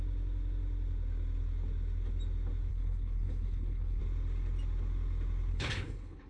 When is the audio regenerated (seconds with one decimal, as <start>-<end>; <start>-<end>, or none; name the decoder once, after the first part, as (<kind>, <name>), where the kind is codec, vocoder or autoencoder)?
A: 2.7-4.0 (codec, HILCodec); 5.5-6.3